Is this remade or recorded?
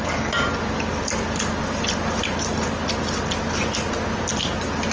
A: recorded